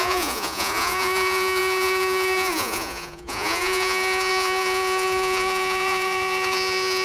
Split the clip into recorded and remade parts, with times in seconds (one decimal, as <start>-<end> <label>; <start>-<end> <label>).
0.0-7.0 remade